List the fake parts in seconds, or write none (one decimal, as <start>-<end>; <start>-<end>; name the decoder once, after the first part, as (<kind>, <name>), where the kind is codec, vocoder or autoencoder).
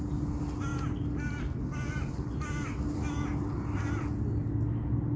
none